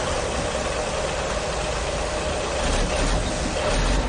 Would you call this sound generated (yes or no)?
no